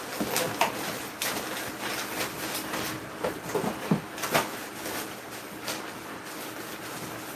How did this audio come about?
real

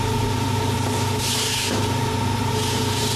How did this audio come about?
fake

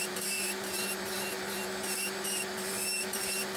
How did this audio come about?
fake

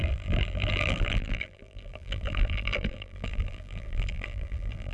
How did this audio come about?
fake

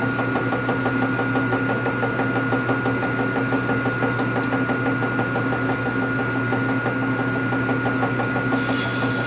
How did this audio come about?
real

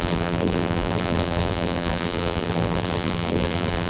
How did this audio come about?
fake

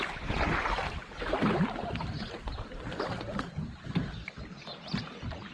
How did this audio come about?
real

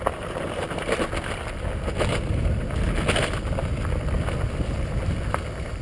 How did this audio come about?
real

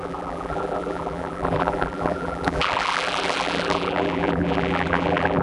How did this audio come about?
fake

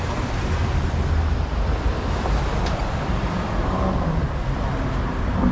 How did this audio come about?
fake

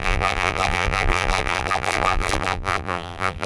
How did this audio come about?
fake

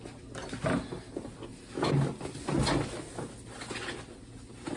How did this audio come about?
real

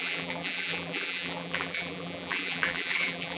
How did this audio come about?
fake